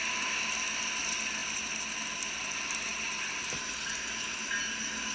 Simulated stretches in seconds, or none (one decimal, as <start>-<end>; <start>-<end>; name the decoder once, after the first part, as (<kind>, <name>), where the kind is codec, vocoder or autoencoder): none